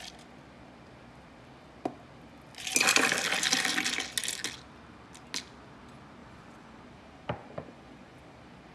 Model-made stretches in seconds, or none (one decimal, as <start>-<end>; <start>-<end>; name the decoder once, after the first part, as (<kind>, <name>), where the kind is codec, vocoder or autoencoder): 6.2-6.8 (vocoder, Vocos); 7.4-8.2